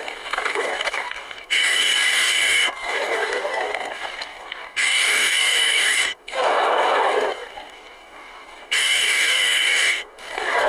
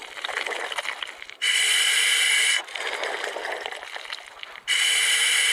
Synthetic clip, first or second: first